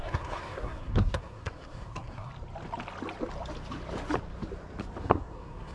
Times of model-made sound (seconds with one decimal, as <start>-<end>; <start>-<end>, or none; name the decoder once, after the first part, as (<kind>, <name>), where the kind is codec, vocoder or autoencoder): 0.0-2.3 (codec, SNAC); 5.0-5.7